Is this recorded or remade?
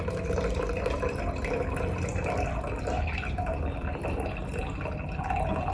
recorded